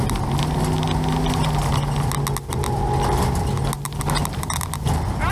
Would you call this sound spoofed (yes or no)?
no